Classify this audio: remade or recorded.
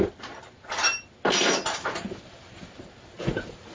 recorded